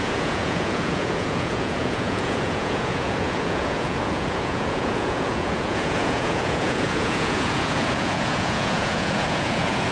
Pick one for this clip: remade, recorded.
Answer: remade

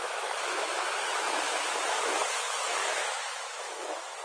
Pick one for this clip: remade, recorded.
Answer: remade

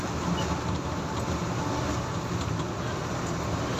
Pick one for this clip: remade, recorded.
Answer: recorded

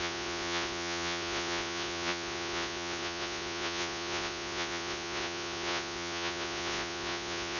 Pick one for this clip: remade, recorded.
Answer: remade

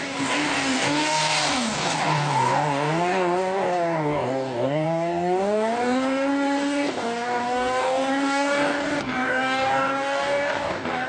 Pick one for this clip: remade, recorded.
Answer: remade